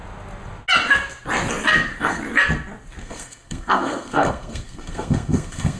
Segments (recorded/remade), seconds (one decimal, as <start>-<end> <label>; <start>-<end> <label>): 0.0-1.7 recorded; 1.7-2.2 remade; 2.2-3.0 recorded; 3.0-5.8 remade